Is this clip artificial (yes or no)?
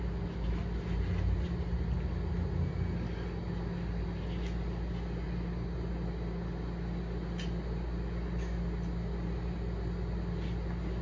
no